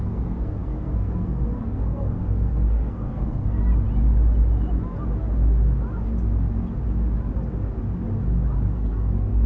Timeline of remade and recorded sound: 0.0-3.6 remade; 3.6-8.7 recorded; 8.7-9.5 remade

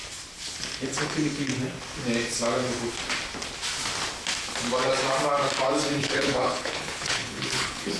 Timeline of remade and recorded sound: 0.0-1.0 recorded; 1.0-1.5 remade; 1.5-6.0 recorded; 6.0-8.0 remade

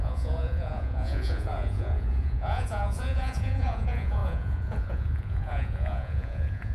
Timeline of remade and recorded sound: 0.0-6.7 remade

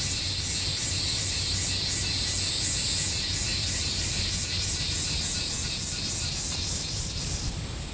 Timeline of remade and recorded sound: 0.0-0.8 recorded; 0.8-1.7 remade; 1.7-3.5 recorded; 3.5-4.1 remade; 4.1-7.9 recorded

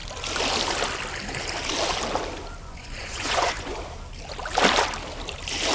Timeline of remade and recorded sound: 0.0-2.6 recorded; 2.6-3.8 remade; 3.8-5.7 recorded

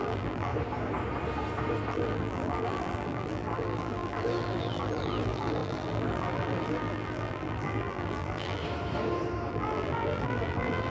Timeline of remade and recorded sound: 0.0-0.5 remade; 0.5-1.9 recorded; 1.9-8.6 remade; 8.6-9.5 recorded; 9.5-10.9 remade

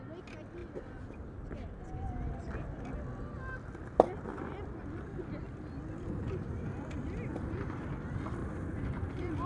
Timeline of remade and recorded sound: 0.0-8.4 recorded; 8.4-9.1 remade; 9.1-9.5 recorded

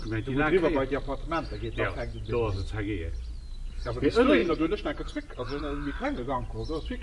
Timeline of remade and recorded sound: 0.0-4.4 recorded; 4.4-5.6 remade; 5.6-7.0 recorded